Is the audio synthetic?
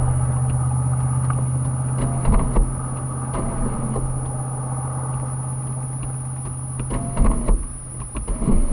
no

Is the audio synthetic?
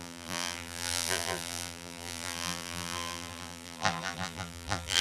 yes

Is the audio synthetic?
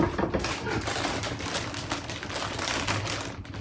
no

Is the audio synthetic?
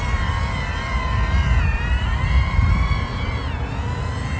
yes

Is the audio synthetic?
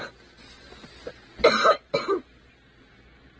no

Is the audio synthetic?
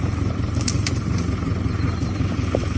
yes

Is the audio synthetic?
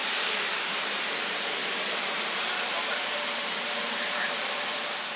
yes